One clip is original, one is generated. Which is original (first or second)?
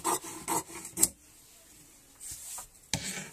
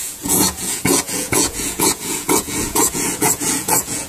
first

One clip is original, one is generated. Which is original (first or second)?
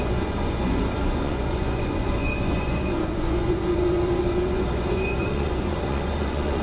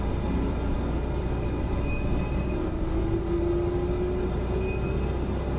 second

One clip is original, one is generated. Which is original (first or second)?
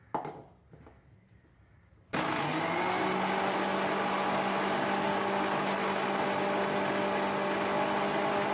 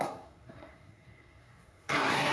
first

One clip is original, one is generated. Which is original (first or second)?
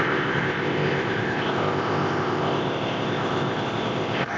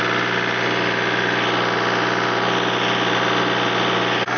second